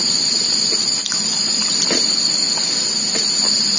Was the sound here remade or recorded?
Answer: recorded